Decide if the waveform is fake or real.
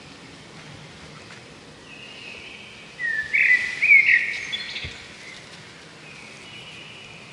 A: real